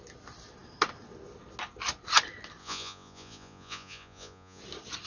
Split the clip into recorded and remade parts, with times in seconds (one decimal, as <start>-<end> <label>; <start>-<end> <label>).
0.0-2.6 recorded; 2.6-4.6 remade; 4.6-5.1 recorded